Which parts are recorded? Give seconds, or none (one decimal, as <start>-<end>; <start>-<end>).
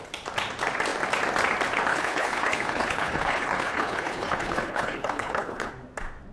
0.0-1.9; 5.7-6.3